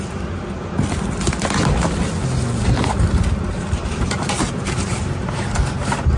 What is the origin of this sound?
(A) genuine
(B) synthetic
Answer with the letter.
A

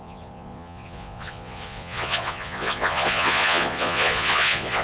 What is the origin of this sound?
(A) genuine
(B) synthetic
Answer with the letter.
B